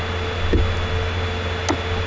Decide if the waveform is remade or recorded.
recorded